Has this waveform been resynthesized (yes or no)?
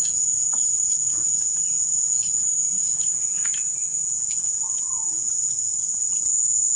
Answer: yes